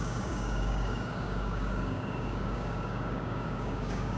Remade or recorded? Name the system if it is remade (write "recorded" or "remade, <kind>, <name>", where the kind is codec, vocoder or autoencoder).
remade, codec, DAC